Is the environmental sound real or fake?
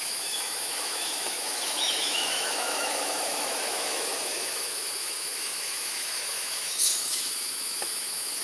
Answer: fake